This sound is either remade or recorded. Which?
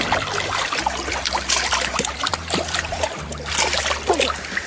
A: recorded